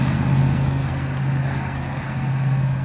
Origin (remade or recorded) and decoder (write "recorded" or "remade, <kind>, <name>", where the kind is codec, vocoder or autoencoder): remade, codec, SNAC